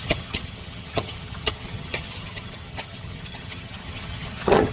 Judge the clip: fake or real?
fake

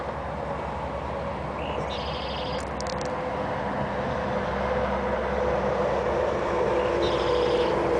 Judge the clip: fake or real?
real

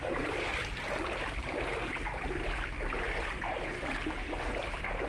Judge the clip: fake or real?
real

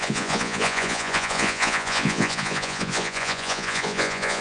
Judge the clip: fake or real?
fake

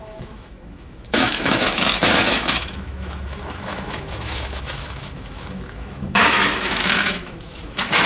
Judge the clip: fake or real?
fake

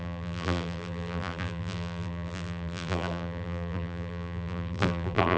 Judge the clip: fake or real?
fake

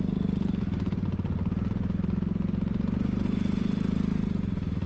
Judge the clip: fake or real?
real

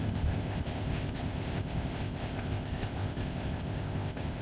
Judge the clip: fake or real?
fake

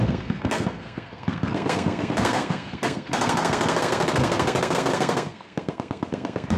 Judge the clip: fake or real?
fake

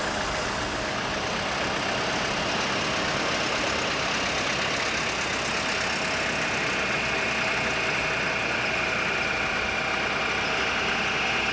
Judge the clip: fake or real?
real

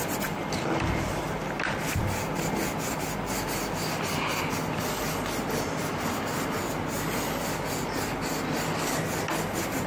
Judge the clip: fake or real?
real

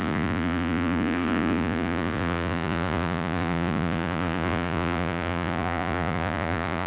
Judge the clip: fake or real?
fake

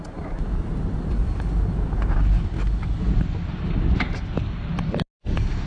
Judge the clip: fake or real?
real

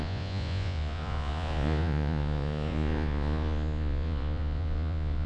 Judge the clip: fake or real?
fake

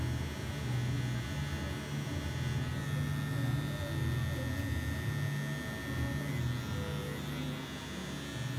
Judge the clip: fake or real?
real